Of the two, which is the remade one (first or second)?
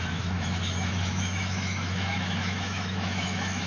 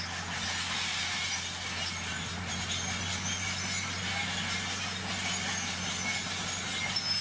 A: first